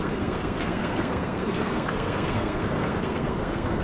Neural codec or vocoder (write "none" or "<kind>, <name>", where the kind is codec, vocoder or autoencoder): codec, SNAC